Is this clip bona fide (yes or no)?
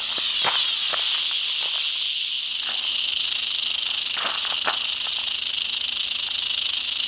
yes